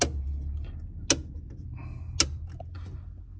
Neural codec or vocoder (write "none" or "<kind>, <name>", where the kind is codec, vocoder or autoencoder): none